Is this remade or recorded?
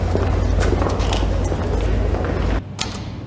recorded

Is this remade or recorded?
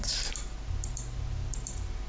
recorded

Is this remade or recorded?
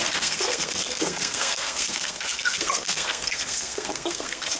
remade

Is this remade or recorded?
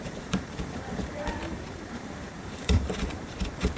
remade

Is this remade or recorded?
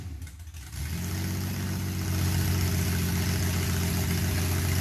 recorded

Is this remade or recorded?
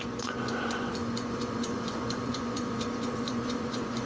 remade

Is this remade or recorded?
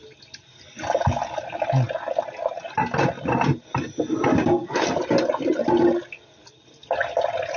recorded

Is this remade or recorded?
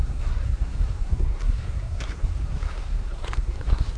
remade